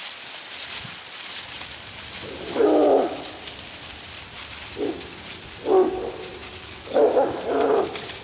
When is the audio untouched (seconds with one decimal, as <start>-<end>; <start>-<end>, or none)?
0.0-6.4; 7.0-8.2